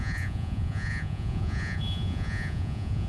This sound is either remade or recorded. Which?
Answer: remade